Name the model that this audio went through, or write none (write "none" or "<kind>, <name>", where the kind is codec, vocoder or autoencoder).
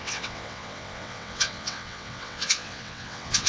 vocoder, WaveNeXt